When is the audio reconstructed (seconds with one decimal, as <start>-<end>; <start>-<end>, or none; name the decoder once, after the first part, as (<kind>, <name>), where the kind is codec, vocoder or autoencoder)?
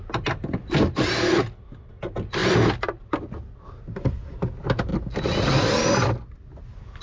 none